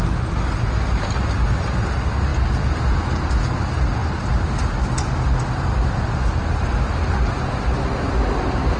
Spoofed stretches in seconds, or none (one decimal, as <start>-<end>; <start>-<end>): none